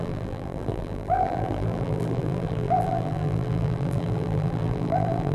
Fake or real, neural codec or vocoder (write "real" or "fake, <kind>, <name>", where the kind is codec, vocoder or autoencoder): fake, vocoder, BigVGAN v2